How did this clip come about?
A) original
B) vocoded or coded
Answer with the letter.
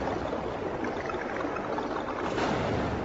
A